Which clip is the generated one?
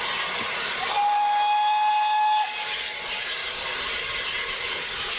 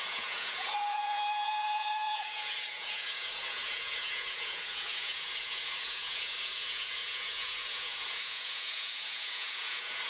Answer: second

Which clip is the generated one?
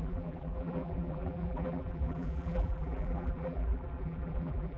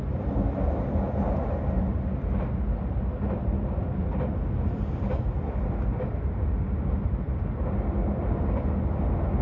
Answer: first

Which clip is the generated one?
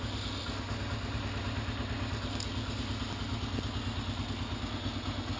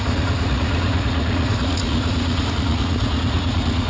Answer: second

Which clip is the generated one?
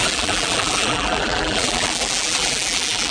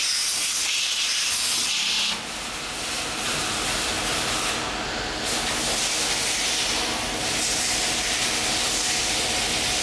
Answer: first